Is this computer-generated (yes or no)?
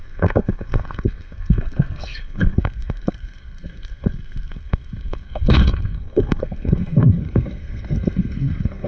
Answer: yes